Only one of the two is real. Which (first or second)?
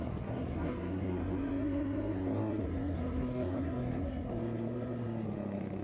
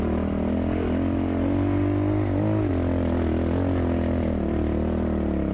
second